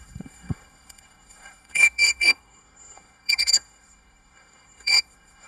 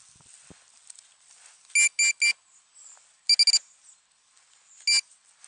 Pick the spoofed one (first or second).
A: first